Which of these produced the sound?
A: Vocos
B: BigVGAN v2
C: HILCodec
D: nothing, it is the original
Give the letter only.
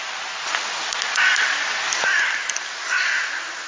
D